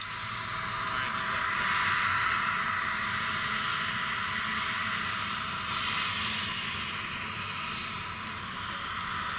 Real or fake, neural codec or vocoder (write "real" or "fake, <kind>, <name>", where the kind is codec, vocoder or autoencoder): real